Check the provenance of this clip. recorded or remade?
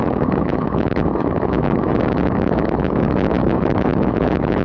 remade